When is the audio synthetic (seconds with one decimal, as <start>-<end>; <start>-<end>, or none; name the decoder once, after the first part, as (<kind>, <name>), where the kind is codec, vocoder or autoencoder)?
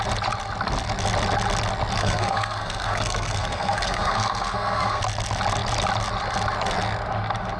2.0-5.0 (codec, SNAC)